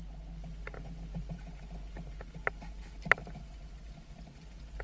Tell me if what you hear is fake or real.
real